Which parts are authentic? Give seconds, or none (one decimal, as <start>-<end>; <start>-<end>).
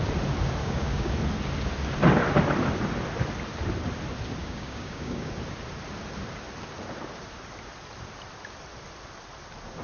0.0-0.6; 1.1-4.4; 5.3-9.8